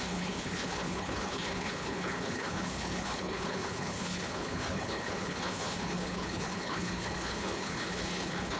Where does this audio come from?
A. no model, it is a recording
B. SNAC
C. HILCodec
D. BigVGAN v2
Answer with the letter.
C